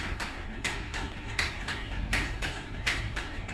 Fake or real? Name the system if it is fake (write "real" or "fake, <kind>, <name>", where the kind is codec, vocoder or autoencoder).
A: fake, codec, SNAC